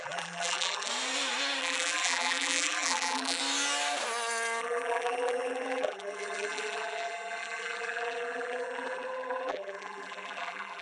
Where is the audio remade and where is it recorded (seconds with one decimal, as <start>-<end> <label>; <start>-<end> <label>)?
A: 0.0-0.9 remade; 0.9-1.6 recorded; 1.6-3.4 remade; 3.4-4.6 recorded; 4.6-10.8 remade